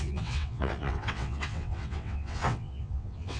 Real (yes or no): no